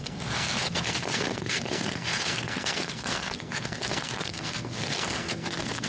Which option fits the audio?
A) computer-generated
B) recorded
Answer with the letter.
A